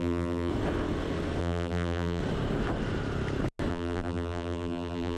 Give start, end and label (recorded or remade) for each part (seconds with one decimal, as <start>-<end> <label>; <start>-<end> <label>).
0.0-0.5 remade; 0.5-1.4 recorded; 1.4-2.2 remade; 2.2-3.7 recorded; 3.7-5.2 remade